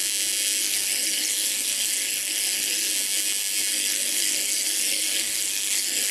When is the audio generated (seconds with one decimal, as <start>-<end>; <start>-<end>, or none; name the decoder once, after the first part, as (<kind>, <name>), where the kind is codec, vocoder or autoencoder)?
0.6-2.9 (codec, SNAC); 3.7-6.1